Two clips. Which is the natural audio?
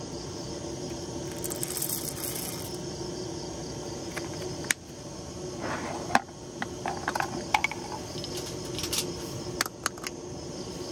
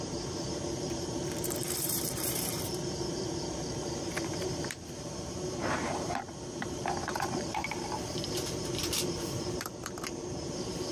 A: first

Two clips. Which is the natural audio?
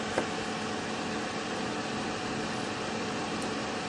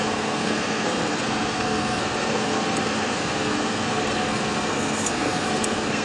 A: first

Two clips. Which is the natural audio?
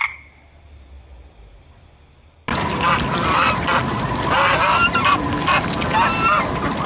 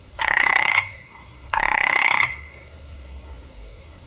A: first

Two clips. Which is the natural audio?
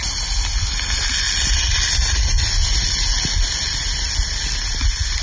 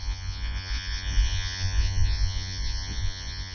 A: first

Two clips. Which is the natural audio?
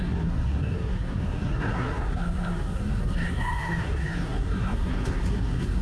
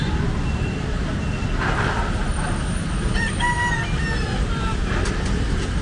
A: second